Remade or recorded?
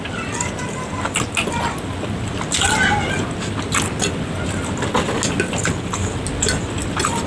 recorded